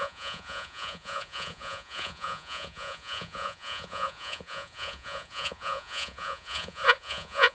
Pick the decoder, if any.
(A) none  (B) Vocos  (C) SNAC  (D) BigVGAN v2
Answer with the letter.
B